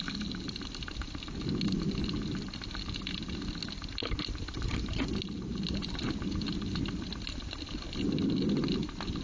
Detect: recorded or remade recorded